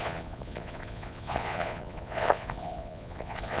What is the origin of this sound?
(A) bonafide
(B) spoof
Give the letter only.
B